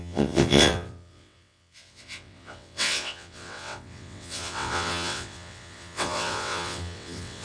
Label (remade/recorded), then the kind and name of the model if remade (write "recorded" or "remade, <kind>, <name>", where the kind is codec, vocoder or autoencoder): remade, vocoder, WaveNeXt